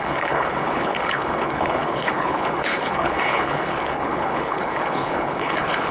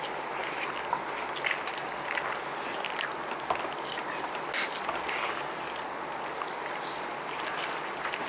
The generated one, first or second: first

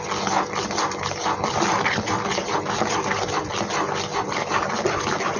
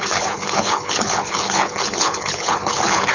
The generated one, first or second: second